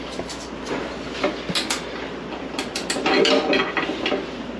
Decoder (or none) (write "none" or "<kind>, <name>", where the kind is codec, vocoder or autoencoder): none